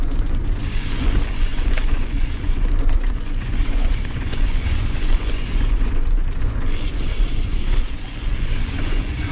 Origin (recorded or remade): remade